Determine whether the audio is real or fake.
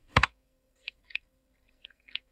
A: fake